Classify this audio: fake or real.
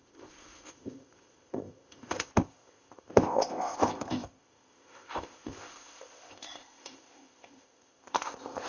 fake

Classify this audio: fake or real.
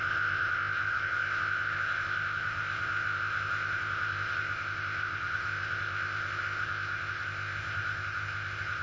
fake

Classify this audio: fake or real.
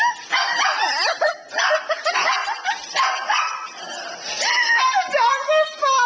real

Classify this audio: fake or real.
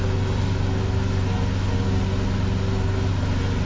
real